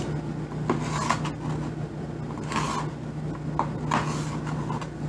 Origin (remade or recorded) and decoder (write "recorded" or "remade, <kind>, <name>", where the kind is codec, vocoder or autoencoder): recorded